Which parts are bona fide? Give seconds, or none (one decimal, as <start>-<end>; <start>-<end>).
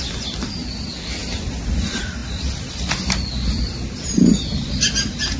0.0-5.4